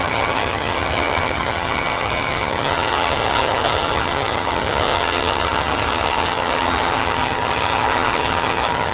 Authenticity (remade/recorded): remade